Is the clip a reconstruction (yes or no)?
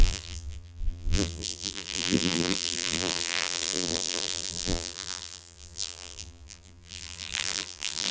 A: yes